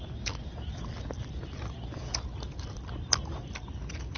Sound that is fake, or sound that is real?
real